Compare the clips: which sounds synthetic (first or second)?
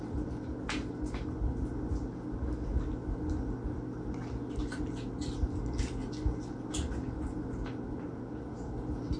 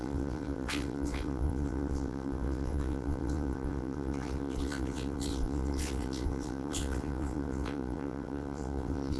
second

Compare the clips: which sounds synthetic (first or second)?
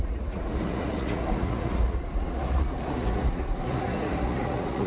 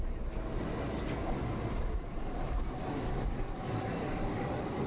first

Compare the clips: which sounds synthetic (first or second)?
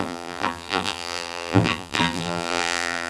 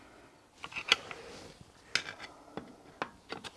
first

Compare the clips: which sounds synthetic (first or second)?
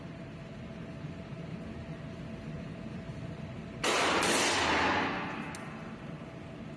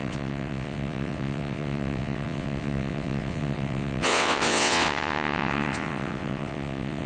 second